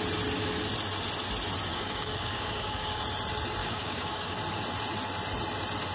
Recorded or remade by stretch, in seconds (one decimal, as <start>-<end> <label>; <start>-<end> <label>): 0.0-1.7 recorded; 1.7-3.0 remade; 3.0-3.6 recorded; 3.6-4.4 remade; 4.4-5.9 recorded